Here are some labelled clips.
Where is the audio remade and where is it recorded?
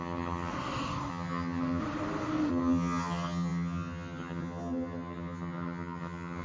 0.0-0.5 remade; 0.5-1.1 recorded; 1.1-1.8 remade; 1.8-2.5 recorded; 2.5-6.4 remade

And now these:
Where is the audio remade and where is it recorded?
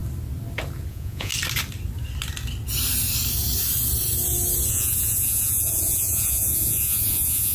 0.0-0.9 recorded; 0.9-1.3 remade; 1.3-4.7 recorded; 4.7-7.5 remade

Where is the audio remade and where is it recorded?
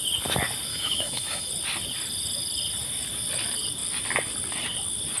0.0-0.7 recorded; 0.7-1.5 remade; 1.5-5.2 recorded